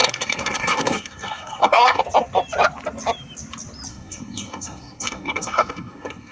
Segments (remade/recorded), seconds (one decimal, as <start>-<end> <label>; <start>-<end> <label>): 0.0-2.0 remade; 2.0-3.9 recorded; 3.9-6.3 remade